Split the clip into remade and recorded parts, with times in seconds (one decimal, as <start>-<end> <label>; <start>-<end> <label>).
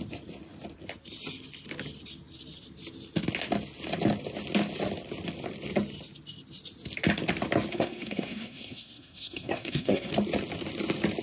0.0-7.7 recorded; 7.7-10.1 remade; 10.1-11.2 recorded